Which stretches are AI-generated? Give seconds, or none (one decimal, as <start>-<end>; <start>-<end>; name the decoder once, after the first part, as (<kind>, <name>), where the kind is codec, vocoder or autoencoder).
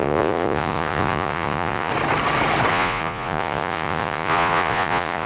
0.0-1.9 (vocoder, Vocos); 2.7-5.3